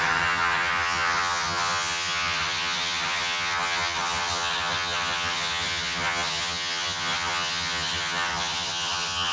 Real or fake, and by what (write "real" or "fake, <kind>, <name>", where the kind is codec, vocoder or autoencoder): fake, vocoder, HiFi-GAN